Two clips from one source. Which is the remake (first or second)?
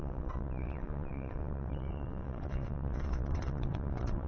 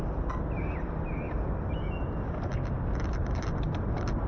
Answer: first